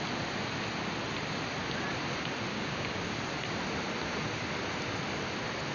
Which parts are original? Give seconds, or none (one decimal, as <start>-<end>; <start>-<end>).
0.0-2.5; 3.0-5.7